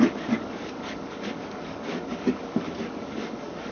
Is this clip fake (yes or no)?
yes